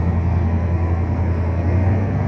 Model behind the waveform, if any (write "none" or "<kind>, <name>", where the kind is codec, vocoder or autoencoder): codec, SNAC